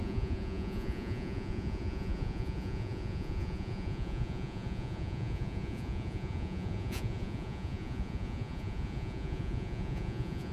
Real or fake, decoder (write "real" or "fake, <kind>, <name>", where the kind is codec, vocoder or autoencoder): fake, vocoder, Vocos